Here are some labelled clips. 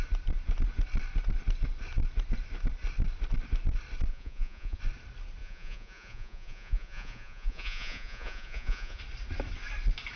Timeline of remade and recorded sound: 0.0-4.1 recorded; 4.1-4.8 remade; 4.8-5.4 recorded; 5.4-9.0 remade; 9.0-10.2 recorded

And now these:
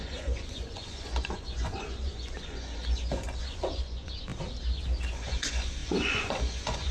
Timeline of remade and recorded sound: 0.0-4.3 remade; 4.3-5.1 recorded; 5.1-6.9 remade

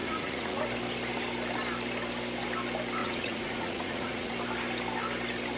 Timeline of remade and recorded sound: 0.0-0.6 remade; 0.6-3.0 recorded; 3.0-4.3 remade; 4.3-5.6 recorded

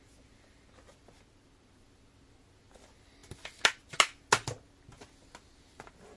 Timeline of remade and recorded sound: 0.0-6.2 recorded

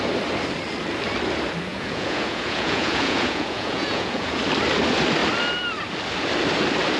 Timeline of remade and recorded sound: 0.0-1.7 recorded; 1.7-4.4 remade; 4.4-7.0 recorded